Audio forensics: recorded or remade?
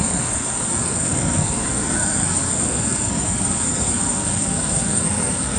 remade